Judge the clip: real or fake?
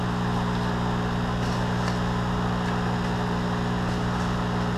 real